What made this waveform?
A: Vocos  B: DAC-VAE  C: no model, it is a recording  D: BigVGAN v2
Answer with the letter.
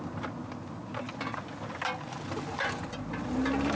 C